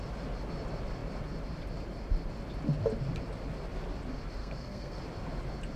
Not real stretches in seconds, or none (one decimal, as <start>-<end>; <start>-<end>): 4.4-5.0